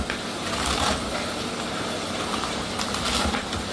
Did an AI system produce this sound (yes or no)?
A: no